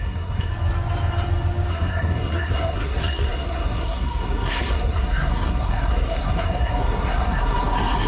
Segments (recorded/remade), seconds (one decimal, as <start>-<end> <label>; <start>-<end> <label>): 0.0-0.5 remade; 0.5-1.7 recorded; 1.7-8.1 remade